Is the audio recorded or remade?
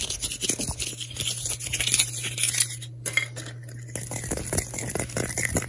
recorded